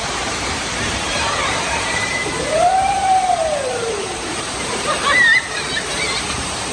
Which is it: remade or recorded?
remade